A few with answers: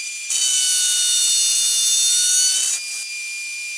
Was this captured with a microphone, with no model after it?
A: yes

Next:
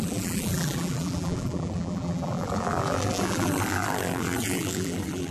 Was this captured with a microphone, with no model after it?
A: no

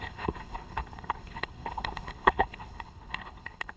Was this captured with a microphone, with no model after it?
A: no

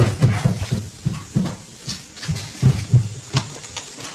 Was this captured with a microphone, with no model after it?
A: yes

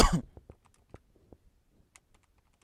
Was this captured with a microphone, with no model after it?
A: yes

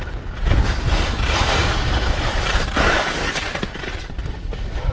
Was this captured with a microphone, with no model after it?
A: yes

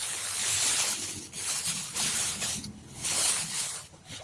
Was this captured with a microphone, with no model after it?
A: no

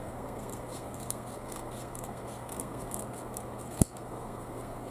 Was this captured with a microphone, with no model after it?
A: no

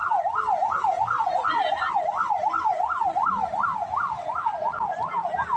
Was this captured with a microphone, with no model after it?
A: yes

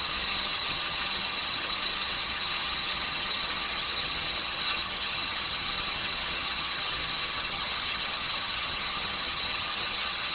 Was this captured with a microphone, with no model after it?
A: no